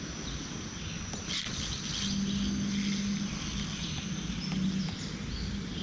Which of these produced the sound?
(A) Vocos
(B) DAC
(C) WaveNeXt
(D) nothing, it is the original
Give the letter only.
D